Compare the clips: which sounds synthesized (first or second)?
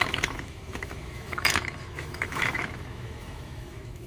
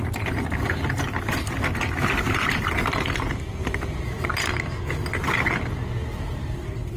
first